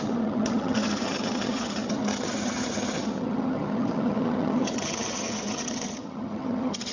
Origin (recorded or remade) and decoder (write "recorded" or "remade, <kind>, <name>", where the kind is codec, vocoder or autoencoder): remade, vocoder, HiFi-GAN